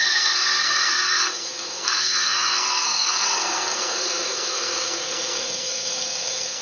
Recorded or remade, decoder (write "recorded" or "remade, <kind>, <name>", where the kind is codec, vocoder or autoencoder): remade, codec, SNAC